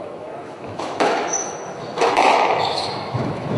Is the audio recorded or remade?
remade